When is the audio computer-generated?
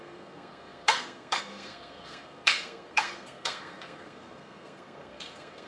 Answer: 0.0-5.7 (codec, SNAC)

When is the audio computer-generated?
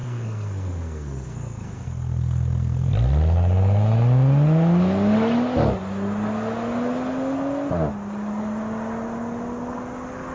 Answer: 0.0-2.9 (codec, SNAC)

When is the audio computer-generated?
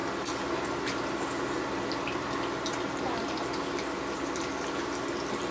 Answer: none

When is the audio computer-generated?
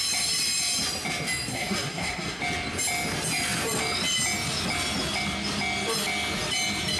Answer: 1.5-2.4 (codec, SNAC)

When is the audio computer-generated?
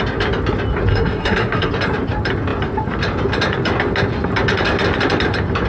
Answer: 0.9-1.7 (codec, SNAC)